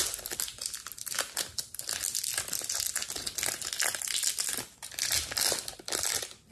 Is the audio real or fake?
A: real